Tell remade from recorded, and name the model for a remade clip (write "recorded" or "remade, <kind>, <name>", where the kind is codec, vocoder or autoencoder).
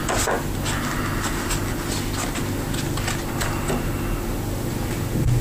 recorded